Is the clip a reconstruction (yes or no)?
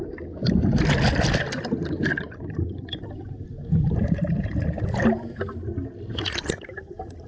no